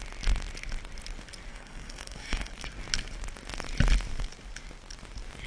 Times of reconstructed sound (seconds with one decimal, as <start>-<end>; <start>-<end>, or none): 1.5-2.5